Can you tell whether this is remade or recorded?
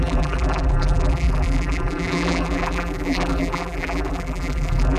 remade